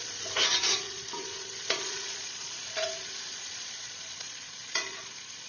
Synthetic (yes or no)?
yes